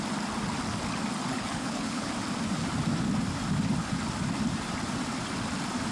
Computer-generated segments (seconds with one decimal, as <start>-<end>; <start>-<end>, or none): 1.3-2.1